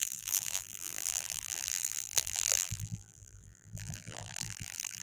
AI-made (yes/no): yes